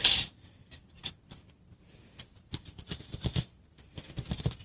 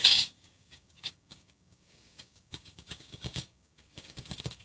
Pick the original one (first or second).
first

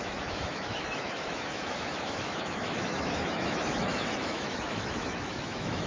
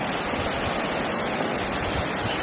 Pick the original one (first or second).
second